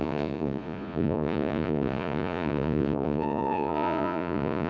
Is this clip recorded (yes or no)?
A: no